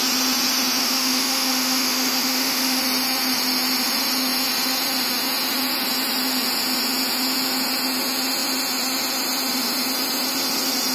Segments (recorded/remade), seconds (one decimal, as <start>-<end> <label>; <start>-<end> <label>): 0.0-0.8 recorded; 0.8-2.8 remade; 2.8-10.9 recorded